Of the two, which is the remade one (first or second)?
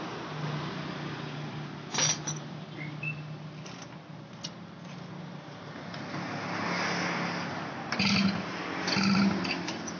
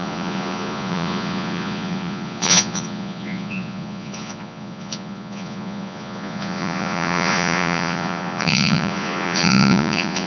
second